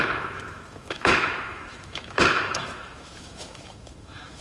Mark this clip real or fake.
fake